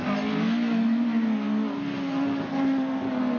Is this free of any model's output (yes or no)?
yes